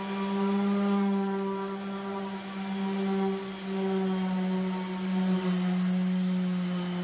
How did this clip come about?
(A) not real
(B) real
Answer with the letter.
B